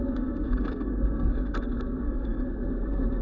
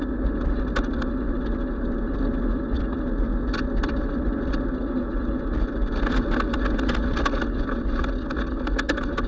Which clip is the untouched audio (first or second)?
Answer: second